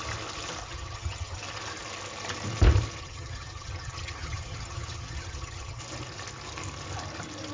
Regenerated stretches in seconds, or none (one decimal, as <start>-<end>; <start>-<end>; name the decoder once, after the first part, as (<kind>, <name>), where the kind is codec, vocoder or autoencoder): 0.6-1.4 (vocoder, HiFi-GAN); 3.0-5.8